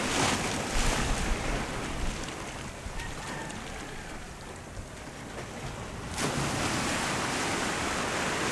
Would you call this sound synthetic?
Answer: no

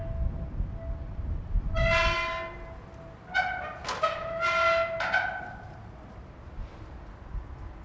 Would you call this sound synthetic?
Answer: no